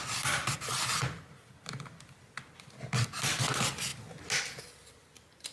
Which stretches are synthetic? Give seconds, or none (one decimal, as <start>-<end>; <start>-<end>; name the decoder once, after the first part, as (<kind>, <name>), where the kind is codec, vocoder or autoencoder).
none